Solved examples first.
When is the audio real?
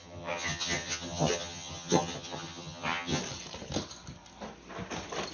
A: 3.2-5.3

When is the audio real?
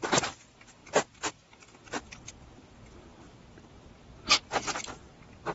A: 0.0-5.5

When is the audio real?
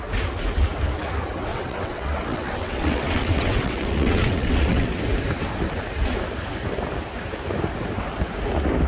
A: 0.0-1.5; 5.0-8.9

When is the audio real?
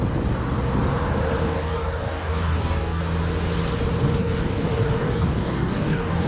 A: 0.0-1.4; 3.0-4.2